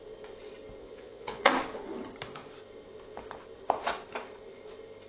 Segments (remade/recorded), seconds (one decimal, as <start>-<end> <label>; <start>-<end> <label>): 0.0-0.8 recorded; 0.8-1.5 remade; 1.5-5.1 recorded